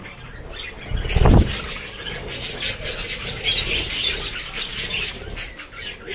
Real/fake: real